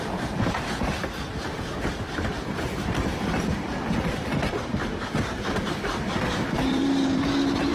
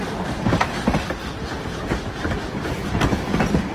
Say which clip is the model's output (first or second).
first